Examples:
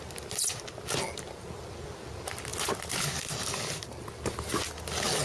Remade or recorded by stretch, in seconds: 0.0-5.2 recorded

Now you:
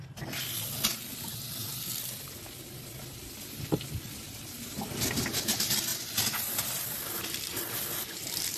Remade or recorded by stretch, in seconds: 0.0-5.9 remade; 5.9-6.5 recorded; 6.5-8.6 remade